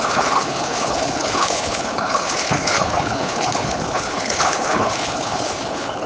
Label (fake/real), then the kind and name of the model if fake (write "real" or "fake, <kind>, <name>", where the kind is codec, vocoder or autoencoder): fake, codec, HILCodec